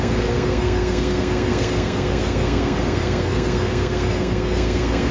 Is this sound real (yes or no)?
no